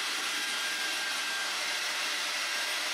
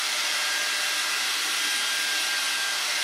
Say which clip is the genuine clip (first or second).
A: second